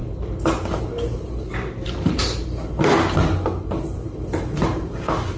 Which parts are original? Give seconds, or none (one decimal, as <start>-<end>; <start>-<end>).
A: 0.0-5.4